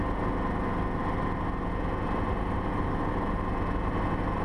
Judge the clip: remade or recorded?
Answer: recorded